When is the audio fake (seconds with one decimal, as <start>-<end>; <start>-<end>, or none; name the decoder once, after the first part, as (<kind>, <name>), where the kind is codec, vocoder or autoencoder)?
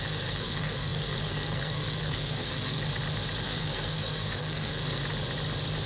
0.0-2.9 (codec, SNAC); 3.4-5.0